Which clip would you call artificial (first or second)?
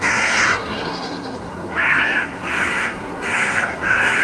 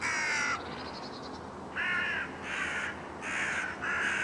first